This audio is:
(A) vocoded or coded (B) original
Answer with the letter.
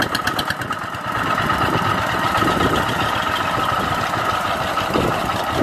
B